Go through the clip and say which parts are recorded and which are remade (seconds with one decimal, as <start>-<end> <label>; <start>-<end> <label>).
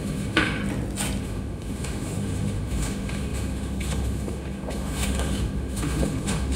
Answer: 0.0-0.6 remade; 0.6-1.2 recorded; 1.2-6.6 remade